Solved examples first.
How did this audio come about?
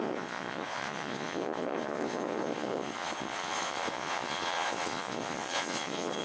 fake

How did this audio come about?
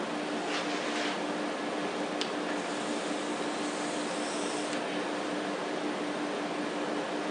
real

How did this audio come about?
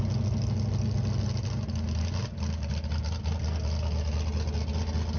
real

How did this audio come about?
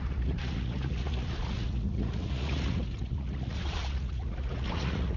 fake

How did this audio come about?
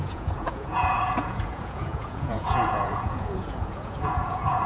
fake